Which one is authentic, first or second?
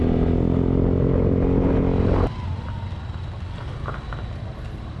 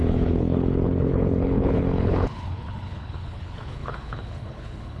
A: first